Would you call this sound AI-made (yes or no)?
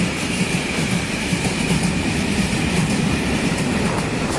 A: yes